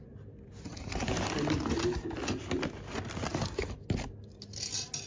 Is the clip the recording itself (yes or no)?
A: yes